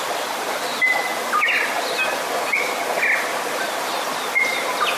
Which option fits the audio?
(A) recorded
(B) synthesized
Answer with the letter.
A